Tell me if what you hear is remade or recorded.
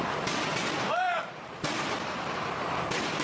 recorded